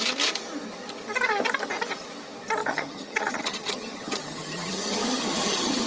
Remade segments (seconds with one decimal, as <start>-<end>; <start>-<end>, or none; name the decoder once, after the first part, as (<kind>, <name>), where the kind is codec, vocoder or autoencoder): 2.6-5.9 (vocoder, HiFi-GAN)